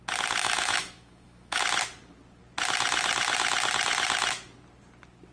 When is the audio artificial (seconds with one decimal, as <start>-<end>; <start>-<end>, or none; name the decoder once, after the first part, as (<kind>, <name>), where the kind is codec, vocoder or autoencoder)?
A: 0.4-1.6 (autoencoder, DAC-VAE)